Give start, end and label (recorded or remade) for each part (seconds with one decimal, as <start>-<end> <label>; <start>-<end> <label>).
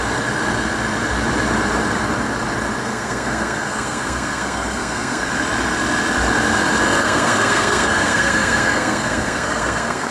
0.0-2.8 recorded; 2.8-5.3 remade; 5.3-7.0 recorded; 7.0-10.1 remade